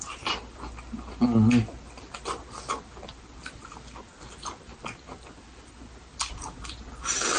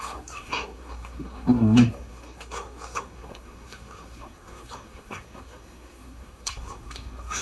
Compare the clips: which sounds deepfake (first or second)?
second